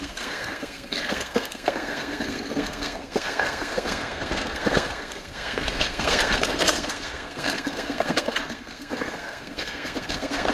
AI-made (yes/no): yes